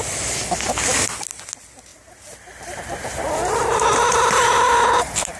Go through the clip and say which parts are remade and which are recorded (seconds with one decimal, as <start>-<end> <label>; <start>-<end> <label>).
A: 0.0-1.9 recorded; 1.9-5.4 remade